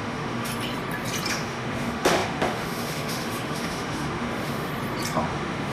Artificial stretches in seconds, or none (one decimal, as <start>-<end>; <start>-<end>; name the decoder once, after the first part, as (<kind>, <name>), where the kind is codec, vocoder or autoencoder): 0.0-0.5 (autoencoder, DAC-VAE); 1.3-4.7; 5.2-5.7